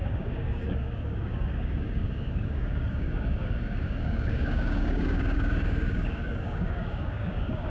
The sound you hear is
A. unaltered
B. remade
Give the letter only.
B